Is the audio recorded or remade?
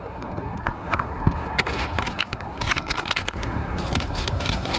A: remade